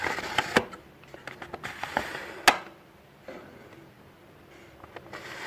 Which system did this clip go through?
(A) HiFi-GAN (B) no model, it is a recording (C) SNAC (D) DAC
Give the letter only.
B